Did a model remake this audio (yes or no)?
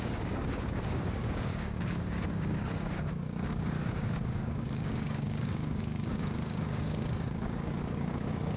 yes